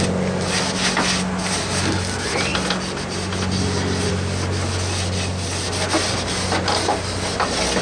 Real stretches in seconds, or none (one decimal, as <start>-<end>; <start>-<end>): 0.0-7.8